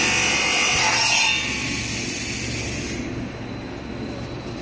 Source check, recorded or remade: recorded